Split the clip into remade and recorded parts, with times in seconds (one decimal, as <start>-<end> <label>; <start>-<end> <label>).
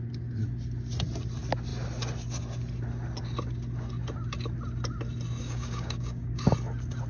0.0-5.4 recorded; 5.4-6.4 remade; 6.4-7.1 recorded